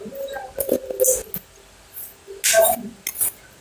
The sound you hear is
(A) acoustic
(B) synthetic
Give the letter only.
A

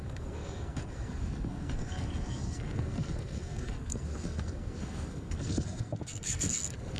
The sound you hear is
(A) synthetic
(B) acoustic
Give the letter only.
A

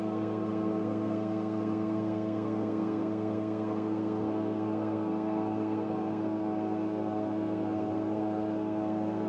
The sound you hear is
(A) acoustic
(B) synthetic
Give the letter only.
B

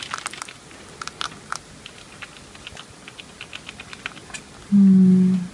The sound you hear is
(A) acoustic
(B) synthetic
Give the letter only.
A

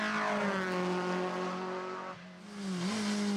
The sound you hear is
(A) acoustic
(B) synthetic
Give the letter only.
A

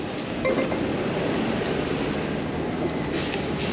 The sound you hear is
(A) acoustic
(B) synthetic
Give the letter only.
A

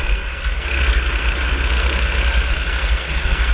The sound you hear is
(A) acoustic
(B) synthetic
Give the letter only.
B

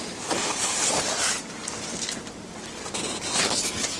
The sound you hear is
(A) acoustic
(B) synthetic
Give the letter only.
A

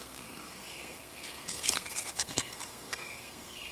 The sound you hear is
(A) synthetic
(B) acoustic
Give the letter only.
A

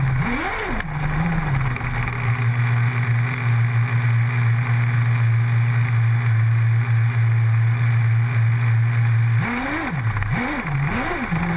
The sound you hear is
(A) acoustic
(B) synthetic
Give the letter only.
A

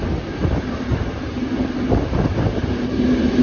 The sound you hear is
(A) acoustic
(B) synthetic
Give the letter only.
A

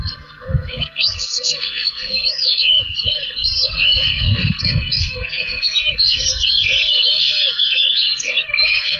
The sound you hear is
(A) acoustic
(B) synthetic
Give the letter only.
B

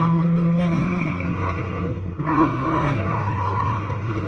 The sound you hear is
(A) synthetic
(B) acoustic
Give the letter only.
A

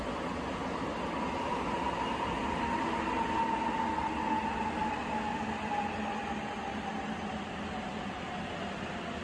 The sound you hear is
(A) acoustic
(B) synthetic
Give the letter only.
A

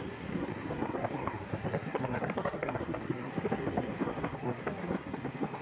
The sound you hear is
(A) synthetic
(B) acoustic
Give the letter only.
A